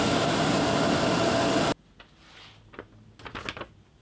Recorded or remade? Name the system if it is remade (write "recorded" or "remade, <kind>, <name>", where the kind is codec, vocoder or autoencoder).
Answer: recorded